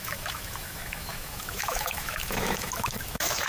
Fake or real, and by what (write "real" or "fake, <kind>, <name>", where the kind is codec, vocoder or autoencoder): fake, autoencoder, DAC-VAE